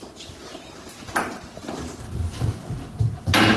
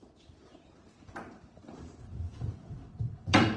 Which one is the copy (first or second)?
second